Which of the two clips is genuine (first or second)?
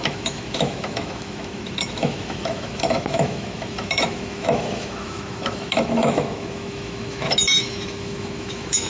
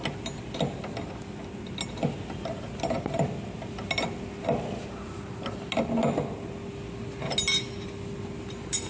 second